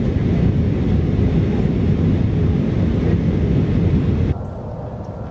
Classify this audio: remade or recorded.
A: recorded